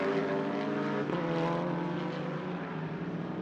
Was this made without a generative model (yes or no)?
yes